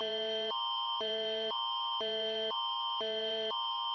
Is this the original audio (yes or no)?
no